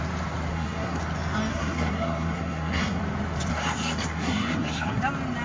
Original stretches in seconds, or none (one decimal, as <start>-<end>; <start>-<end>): 0.0-0.5; 1.0-1.5; 3.0-3.5; 5.0-5.4